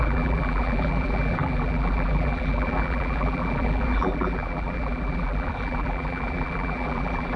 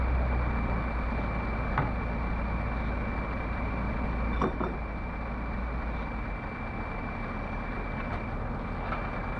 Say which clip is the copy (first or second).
first